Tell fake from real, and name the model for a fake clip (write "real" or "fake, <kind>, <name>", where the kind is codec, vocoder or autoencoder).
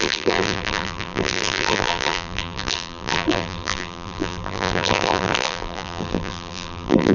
fake, vocoder, BigVGAN v2